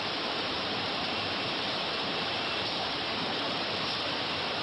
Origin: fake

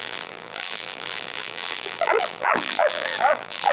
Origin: fake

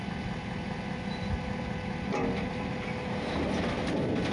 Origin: real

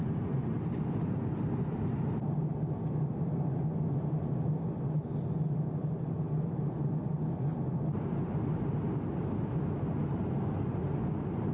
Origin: real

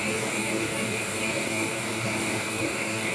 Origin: fake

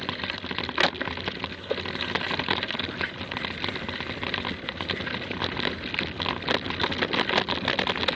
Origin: real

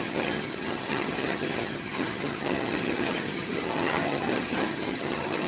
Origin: fake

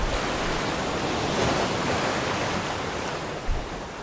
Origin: real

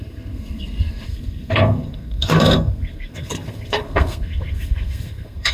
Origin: fake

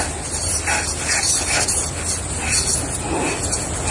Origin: real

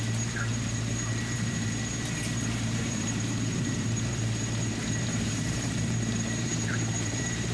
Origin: fake